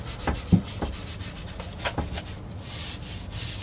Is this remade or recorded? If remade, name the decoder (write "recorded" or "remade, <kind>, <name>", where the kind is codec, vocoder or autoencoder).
recorded